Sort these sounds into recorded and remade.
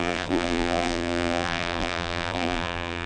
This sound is remade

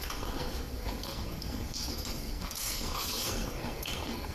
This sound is remade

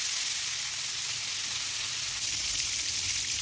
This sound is recorded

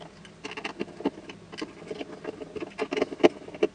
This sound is recorded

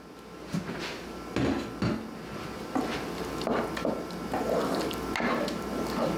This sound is recorded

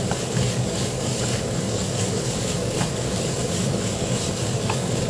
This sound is remade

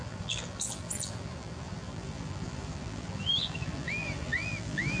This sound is remade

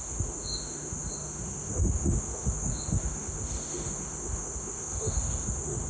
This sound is remade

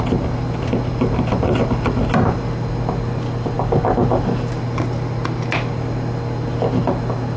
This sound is recorded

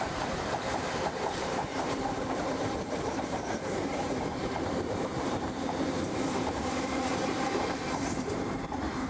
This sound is remade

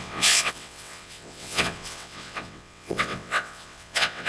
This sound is remade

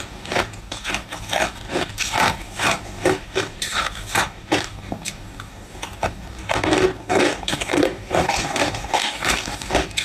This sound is remade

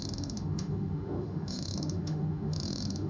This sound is remade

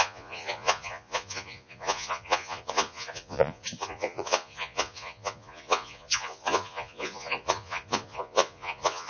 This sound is remade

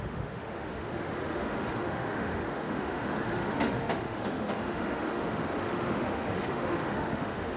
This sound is remade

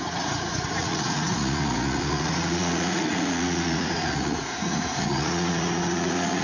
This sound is remade